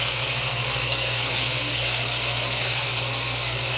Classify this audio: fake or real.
fake